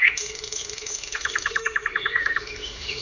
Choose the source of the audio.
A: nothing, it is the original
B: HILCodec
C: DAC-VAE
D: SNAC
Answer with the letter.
C